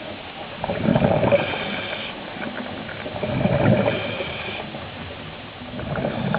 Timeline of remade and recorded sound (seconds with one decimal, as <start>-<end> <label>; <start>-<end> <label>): 0.0-0.9 recorded; 0.9-1.5 remade; 1.5-6.4 recorded